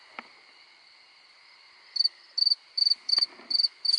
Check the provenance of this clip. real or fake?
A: real